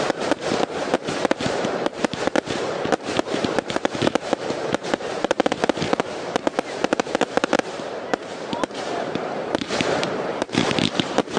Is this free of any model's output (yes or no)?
no